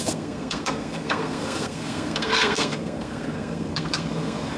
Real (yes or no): no